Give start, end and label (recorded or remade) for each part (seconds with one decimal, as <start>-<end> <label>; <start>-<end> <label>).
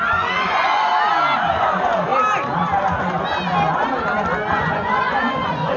0.0-0.9 remade; 0.9-1.5 recorded; 1.5-2.1 remade; 2.1-4.5 recorded; 4.5-5.8 remade